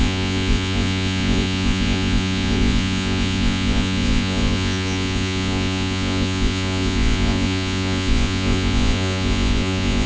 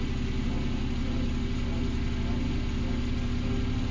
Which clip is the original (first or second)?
second